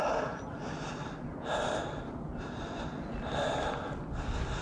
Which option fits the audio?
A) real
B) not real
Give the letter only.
A